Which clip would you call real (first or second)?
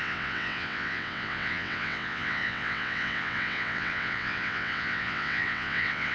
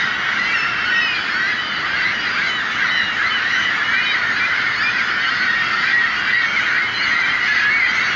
second